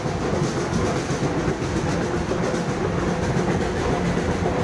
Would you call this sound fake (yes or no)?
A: no